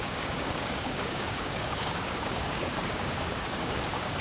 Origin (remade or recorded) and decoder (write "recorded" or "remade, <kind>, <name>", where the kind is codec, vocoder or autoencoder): remade, codec, DAC